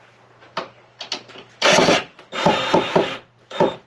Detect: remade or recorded recorded